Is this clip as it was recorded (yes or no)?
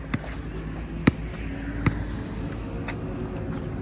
yes